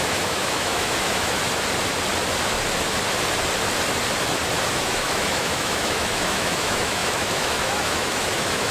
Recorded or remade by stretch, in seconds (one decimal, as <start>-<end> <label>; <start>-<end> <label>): 0.0-1.4 remade; 1.4-4.7 recorded; 4.7-8.7 remade